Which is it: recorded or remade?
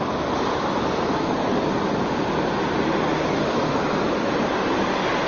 recorded